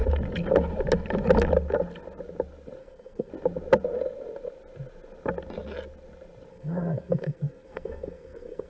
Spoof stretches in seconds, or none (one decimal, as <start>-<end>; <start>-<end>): 2.8-3.3; 6.5-8.7